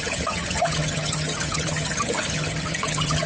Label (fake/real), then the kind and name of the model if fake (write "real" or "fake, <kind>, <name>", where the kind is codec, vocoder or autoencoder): fake, vocoder, HiFi-GAN